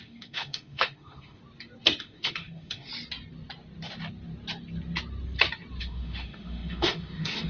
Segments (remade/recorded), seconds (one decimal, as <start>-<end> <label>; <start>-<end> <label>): 0.0-1.4 remade; 1.4-2.0 recorded; 2.0-2.9 remade; 2.9-5.8 recorded; 5.8-7.5 remade